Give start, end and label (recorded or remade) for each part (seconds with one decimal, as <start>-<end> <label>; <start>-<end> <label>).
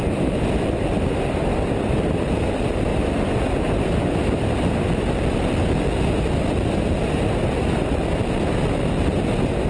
0.0-2.3 remade; 2.3-9.7 recorded